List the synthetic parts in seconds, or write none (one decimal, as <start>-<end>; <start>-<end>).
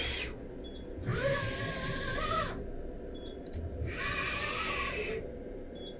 none